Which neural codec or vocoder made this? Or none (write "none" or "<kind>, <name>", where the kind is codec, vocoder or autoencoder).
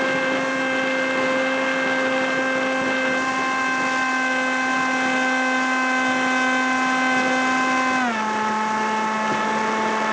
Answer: none